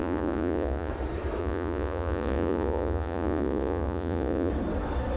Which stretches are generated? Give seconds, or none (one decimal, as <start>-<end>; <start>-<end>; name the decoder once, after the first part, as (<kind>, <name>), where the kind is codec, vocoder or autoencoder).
0.0-0.9 (vocoder, Vocos); 1.4-4.5

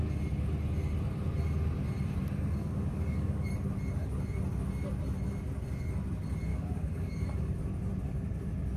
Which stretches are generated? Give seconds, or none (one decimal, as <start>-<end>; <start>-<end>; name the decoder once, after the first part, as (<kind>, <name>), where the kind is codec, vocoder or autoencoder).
2.6-3.5 (codec, DAC); 6.5-7.5